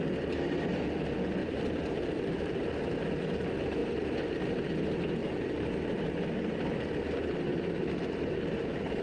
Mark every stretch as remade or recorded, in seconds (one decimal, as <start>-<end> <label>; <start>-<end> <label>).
0.0-1.4 recorded; 1.4-2.7 remade; 2.7-5.2 recorded; 5.2-6.8 remade; 6.8-7.5 recorded; 7.5-9.0 remade